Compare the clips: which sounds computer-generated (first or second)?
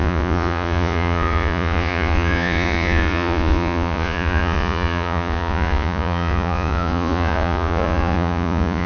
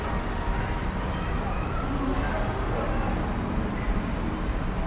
first